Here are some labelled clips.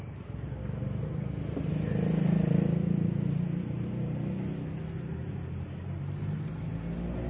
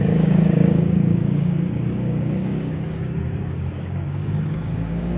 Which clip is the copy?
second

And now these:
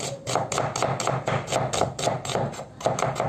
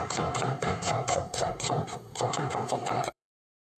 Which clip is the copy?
second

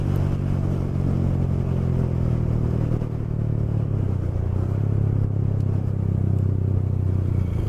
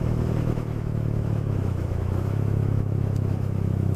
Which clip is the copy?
second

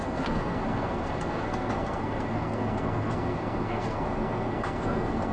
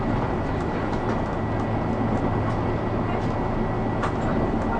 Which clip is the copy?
first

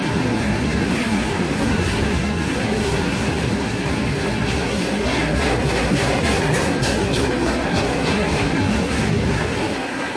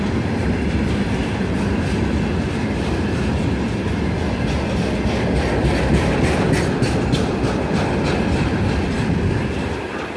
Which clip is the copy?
first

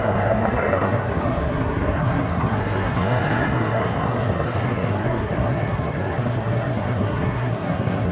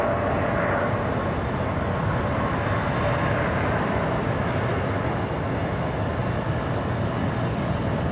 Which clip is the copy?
first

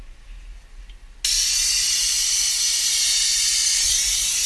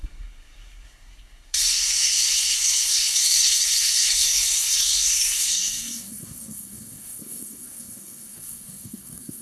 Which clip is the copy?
second